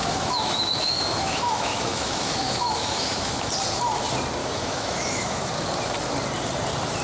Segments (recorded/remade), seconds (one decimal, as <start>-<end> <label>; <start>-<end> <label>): 0.0-3.5 remade; 3.5-4.4 recorded; 4.4-5.5 remade; 5.5-7.0 recorded